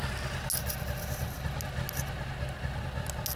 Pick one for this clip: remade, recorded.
recorded